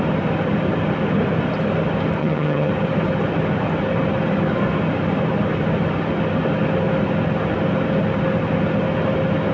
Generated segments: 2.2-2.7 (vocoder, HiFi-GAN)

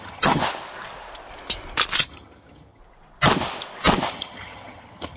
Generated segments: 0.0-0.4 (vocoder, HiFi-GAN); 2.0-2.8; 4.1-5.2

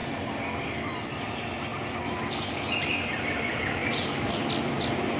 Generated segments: none